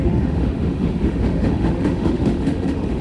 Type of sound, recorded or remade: remade